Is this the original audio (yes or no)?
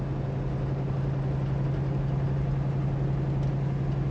yes